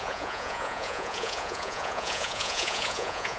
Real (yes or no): no